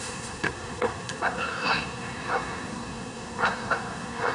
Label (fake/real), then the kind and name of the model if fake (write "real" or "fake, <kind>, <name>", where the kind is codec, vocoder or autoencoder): fake, codec, SNAC